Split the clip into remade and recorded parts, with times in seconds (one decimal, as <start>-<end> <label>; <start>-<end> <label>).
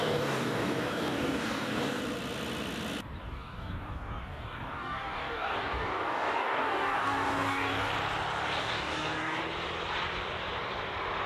0.0-2.0 remade; 2.0-3.2 recorded; 3.2-7.9 remade; 7.9-8.6 recorded; 8.6-9.4 remade; 9.4-11.3 recorded